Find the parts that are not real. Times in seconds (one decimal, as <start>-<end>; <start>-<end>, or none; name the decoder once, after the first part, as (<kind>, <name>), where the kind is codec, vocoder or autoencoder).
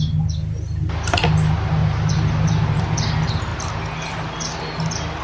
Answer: none